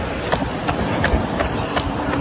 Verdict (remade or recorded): recorded